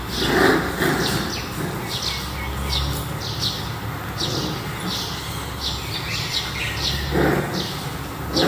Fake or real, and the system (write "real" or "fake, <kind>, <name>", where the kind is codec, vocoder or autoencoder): real